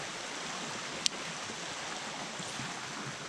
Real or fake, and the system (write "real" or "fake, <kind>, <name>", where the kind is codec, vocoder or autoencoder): real